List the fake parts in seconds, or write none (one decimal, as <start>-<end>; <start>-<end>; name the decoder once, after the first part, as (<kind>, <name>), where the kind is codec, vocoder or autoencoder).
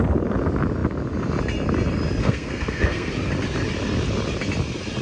2.2-3.1 (codec, SNAC)